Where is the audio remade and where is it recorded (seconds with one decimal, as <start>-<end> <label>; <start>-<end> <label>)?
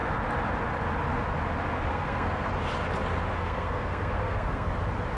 0.0-1.9 recorded; 1.9-2.5 remade; 2.5-3.4 recorded; 3.4-4.7 remade; 4.7-5.2 recorded